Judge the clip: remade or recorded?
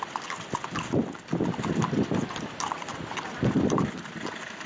recorded